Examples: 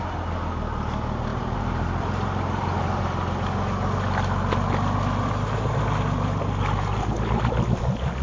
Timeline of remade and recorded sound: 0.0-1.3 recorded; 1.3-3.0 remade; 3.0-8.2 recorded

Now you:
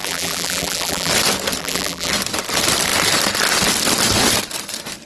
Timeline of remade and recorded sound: 0.0-1.1 remade; 1.1-1.6 recorded; 1.6-2.1 remade; 2.1-5.1 recorded